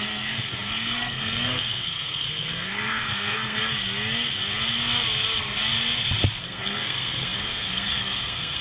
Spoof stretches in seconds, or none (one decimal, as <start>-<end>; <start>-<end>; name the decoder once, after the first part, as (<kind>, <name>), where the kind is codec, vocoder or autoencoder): 0.0-3.6 (codec, SNAC); 6.4-8.6